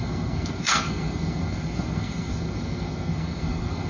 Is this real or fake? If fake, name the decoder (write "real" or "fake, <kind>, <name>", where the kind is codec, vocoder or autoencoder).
fake, codec, SNAC